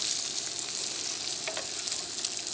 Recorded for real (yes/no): yes